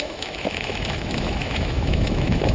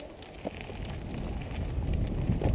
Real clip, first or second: second